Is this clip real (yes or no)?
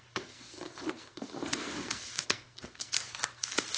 no